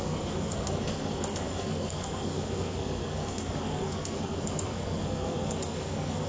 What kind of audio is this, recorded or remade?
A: remade